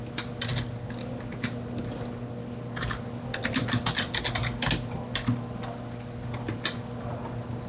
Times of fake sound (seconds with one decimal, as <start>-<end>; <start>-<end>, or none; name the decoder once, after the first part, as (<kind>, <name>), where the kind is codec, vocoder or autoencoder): none